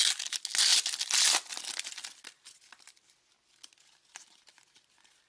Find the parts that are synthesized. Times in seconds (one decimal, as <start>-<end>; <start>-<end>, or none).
none